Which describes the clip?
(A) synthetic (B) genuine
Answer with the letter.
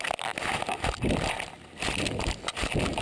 B